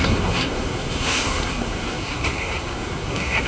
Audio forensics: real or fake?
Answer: fake